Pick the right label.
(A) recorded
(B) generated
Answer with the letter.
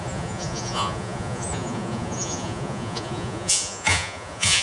B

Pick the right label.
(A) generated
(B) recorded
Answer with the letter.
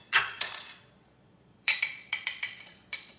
A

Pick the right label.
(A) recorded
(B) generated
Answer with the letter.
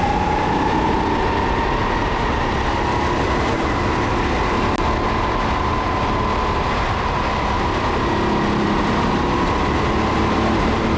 A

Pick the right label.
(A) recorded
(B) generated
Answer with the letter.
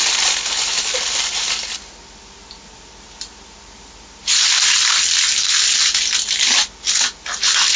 A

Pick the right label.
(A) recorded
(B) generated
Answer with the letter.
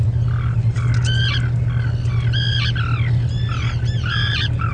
A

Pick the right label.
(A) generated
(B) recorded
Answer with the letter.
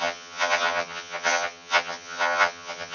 A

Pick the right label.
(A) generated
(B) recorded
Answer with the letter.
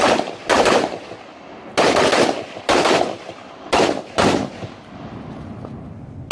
B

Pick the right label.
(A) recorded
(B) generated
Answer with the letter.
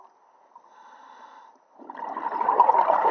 A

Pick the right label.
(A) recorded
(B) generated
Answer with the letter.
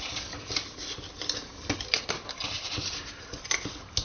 A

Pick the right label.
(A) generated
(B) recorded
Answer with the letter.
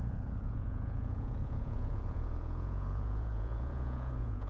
A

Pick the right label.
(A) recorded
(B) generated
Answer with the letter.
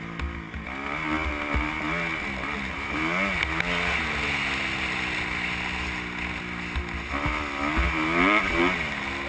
A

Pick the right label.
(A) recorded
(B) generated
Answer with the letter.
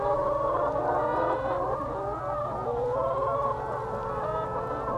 A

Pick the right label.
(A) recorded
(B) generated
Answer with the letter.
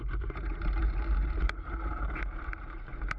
B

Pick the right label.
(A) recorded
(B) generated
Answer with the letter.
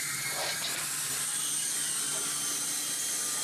A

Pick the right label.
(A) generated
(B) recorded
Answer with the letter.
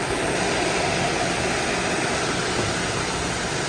B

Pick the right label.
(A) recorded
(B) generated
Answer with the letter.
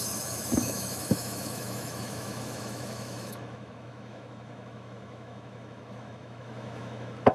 B